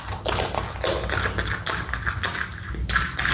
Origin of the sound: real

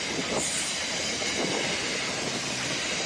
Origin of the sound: real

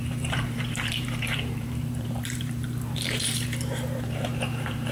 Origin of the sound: fake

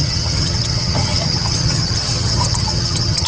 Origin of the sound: fake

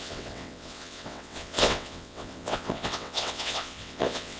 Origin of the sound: fake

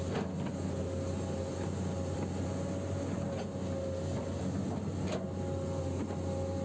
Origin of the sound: real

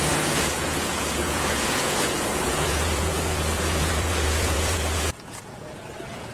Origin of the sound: fake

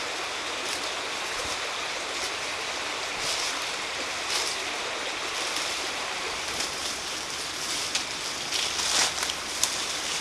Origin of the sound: real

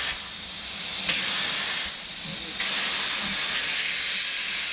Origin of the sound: real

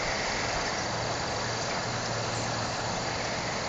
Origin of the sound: real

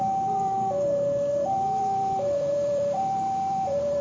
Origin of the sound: fake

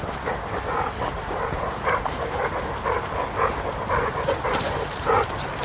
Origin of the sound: real